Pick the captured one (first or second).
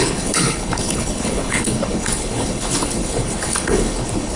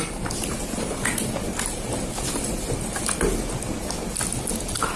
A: second